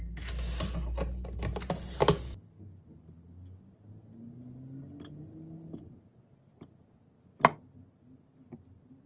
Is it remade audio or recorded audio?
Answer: recorded